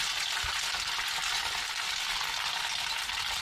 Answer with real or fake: real